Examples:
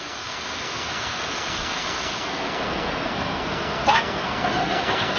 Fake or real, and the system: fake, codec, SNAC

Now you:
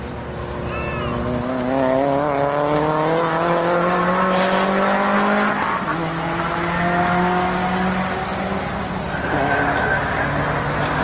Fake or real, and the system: real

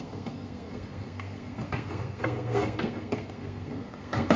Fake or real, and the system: fake, codec, SNAC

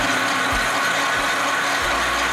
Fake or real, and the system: real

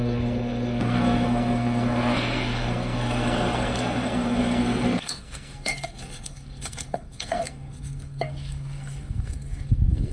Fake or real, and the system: fake, codec, SNAC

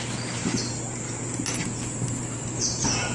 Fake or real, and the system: real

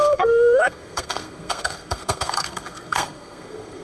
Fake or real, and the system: fake, codec, SNAC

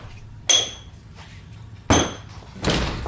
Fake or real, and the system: real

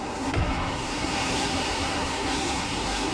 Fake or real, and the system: fake, codec, SNAC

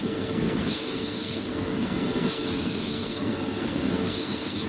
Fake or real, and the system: fake, codec, SNAC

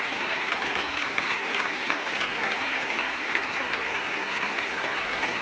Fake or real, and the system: fake, codec, SNAC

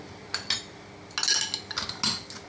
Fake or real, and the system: real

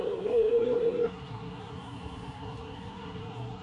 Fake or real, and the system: fake, codec, SNAC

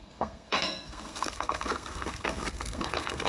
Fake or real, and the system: fake, codec, SNAC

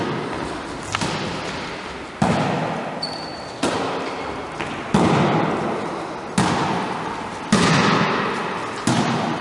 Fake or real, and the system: real